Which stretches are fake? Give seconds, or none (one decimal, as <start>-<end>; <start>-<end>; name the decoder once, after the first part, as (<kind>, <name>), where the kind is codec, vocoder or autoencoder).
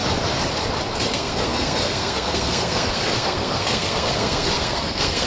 1.1-5.3 (codec, SNAC)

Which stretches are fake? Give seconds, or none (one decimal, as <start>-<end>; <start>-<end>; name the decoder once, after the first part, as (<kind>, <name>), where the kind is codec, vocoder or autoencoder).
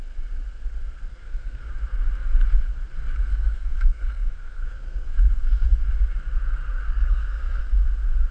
1.1-1.7 (codec, SNAC); 3.3-5.9; 6.8-7.6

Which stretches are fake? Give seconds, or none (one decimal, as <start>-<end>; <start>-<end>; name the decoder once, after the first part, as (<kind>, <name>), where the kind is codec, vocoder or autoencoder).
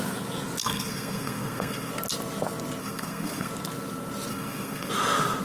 0.6-1.9 (codec, SNAC); 2.8-3.5; 4.3-4.9